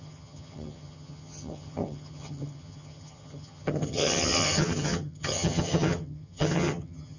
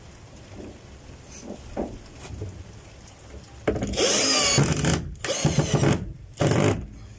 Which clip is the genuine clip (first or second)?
second